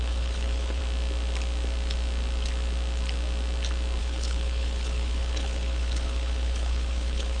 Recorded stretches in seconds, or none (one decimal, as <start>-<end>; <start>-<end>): 0.8-4.0

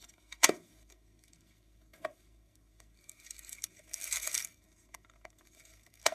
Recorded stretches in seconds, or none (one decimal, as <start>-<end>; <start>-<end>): none

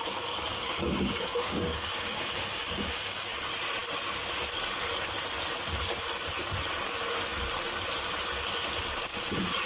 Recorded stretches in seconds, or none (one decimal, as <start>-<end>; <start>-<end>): 0.0-0.5; 3.3-9.7